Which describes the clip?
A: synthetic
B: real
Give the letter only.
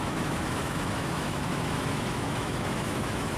A